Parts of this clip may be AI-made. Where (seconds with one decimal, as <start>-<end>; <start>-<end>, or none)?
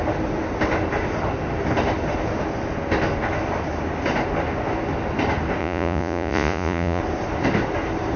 5.6-7.0